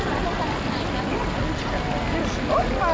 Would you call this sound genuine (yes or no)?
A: yes